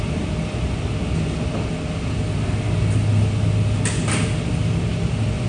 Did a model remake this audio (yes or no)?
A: no